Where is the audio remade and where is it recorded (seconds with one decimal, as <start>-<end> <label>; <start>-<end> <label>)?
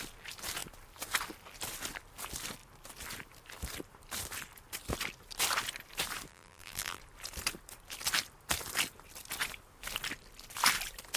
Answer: 0.0-6.3 recorded; 6.3-7.0 remade; 7.0-11.2 recorded